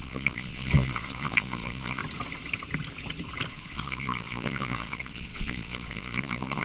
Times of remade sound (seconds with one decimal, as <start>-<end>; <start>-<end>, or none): 0.0-2.0; 3.5-6.6

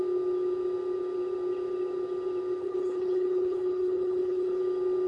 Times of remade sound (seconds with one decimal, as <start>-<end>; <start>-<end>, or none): 2.6-4.6

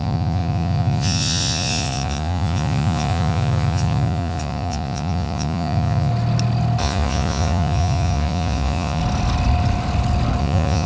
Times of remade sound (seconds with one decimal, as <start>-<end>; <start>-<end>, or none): 0.0-6.1; 6.8-9.0; 10.4-10.9

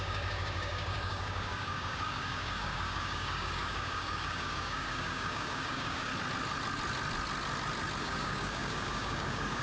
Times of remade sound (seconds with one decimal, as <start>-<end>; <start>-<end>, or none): 0.0-6.1; 8.0-9.6

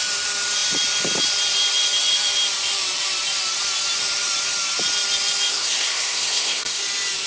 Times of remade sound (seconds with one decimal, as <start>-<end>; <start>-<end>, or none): 5.5-6.8

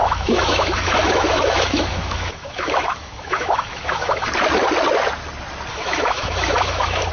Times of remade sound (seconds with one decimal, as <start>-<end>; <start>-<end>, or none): 0.0-4.3; 5.7-7.1